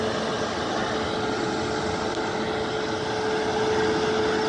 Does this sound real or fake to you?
real